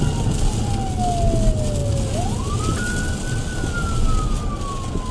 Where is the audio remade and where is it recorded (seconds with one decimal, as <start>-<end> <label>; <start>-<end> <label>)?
0.0-5.1 recorded